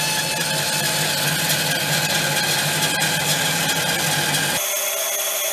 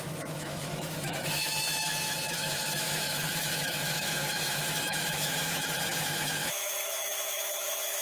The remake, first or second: second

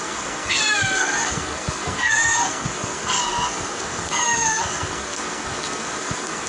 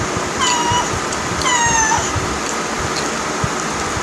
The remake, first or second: first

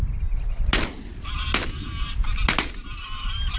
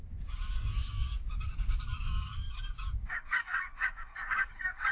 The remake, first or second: second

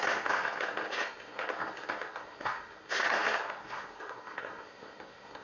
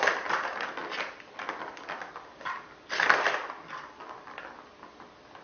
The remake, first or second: first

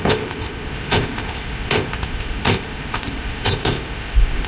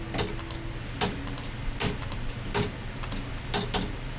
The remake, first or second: first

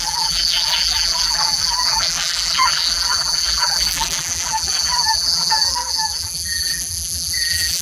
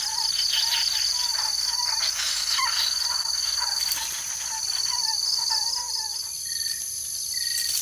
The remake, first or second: first